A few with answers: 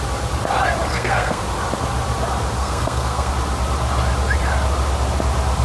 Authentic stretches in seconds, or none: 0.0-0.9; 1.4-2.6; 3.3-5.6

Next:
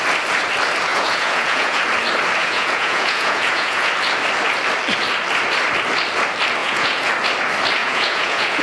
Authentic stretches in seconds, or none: 0.0-0.9; 1.8-2.4; 3.9-6.6; 7.1-7.8

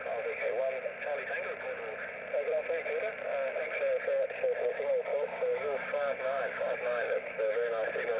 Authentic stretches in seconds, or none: 0.0-5.1; 7.5-8.2